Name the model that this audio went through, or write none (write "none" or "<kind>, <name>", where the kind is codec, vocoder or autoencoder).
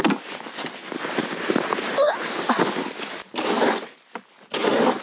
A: none